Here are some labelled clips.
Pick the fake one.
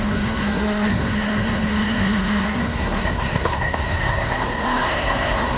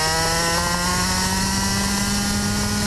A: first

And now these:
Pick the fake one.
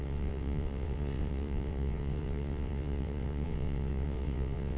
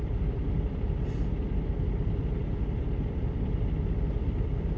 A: first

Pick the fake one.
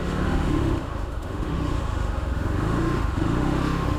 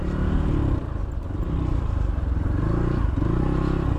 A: first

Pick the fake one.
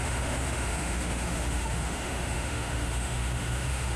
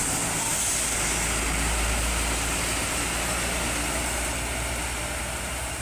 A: first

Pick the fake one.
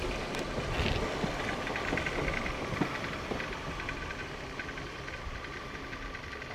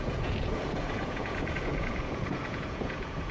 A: second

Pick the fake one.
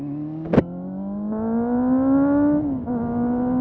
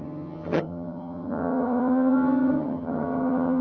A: second